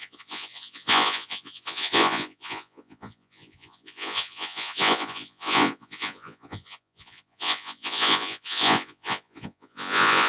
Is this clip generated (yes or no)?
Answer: yes